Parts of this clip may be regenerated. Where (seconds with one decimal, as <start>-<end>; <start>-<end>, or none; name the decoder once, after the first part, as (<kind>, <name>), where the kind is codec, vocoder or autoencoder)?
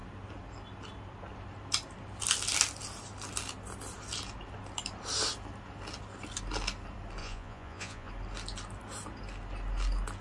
7.2-8.1 (vocoder, Vocos)